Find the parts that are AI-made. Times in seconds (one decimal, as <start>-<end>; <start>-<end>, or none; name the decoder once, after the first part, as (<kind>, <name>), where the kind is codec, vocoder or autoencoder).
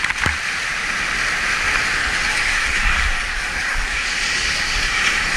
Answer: 2.0-4.8 (codec, DAC)